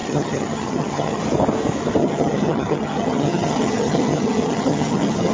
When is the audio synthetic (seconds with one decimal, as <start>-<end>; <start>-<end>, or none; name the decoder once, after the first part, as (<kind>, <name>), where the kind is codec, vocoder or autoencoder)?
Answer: 0.0-1.2 (vocoder, HiFi-GAN); 2.0-5.3